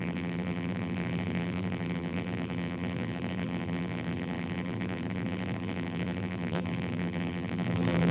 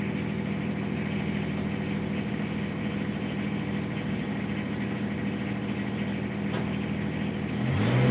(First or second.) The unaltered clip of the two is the second